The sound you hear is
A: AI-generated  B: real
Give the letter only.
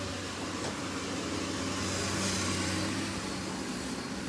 B